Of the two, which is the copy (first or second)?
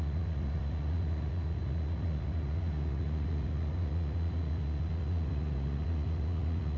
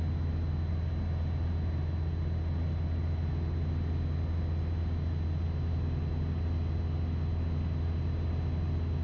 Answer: first